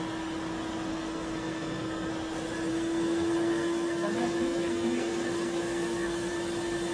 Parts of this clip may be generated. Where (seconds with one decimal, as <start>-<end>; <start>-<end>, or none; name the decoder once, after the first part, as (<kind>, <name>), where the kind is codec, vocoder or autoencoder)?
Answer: 0.9-2.1 (codec, SNAC); 2.7-6.3